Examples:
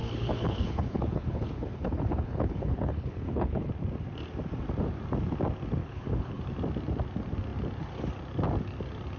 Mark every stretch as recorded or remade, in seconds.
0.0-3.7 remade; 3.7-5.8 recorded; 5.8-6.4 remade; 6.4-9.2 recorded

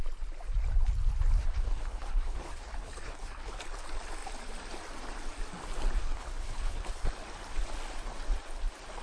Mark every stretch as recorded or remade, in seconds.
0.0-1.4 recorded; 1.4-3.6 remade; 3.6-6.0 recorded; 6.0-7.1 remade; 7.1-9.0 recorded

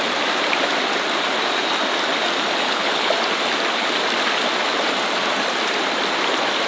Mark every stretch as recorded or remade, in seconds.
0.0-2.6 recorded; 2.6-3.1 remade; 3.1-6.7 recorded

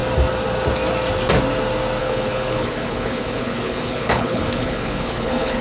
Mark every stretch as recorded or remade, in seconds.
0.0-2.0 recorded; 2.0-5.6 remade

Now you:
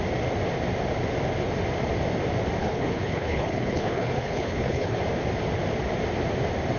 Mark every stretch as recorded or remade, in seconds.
0.0-2.6 recorded; 2.6-5.0 remade; 5.0-6.8 recorded

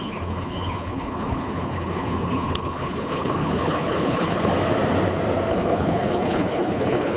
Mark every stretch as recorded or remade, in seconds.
0.0-4.5 remade; 4.5-5.5 recorded; 5.5-7.2 remade

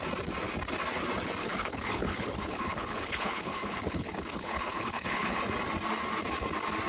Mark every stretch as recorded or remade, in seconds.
0.0-1.4 recorded; 1.4-5.4 remade; 5.4-6.9 recorded